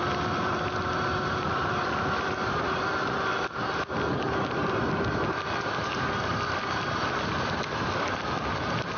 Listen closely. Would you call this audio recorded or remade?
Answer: recorded